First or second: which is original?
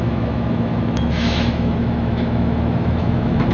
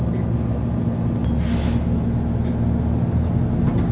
second